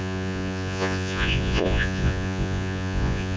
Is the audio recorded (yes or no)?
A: no